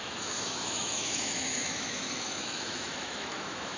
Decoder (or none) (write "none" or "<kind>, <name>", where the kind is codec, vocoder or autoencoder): autoencoder, DAC-VAE